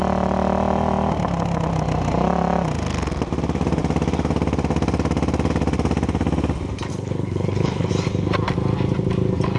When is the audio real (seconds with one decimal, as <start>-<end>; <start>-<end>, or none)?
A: 0.0-6.9; 7.9-9.6